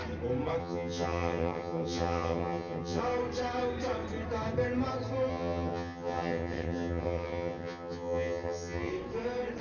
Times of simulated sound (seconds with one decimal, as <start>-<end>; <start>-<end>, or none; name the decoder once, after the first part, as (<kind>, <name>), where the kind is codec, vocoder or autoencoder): 0.6-3.0 (vocoder, HiFi-GAN); 5.3-8.9